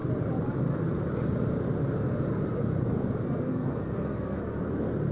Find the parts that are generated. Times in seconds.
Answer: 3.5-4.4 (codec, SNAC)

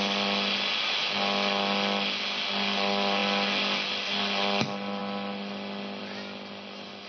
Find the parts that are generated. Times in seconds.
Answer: none